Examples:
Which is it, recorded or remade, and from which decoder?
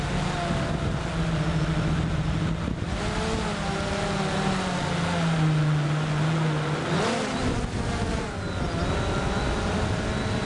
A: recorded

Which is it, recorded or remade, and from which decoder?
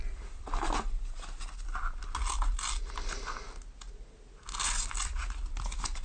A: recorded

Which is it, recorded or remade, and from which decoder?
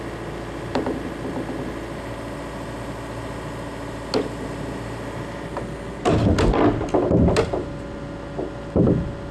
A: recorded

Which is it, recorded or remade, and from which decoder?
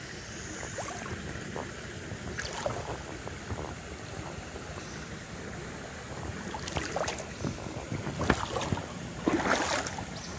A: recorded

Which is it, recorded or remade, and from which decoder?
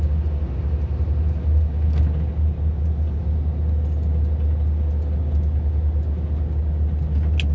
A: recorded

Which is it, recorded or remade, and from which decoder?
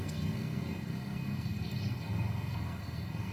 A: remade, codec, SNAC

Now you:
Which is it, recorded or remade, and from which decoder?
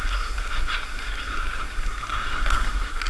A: remade, codec, SNAC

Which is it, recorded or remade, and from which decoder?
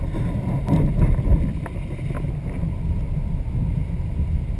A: recorded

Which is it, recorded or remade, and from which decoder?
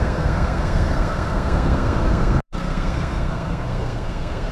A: remade, codec, SNAC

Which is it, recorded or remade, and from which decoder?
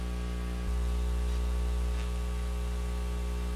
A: recorded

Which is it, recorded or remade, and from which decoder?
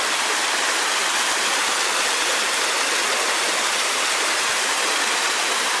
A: recorded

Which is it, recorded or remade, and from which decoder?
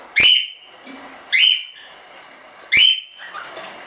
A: recorded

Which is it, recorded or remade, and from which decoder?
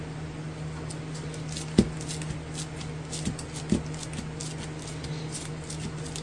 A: recorded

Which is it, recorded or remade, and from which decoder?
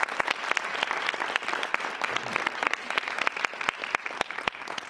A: recorded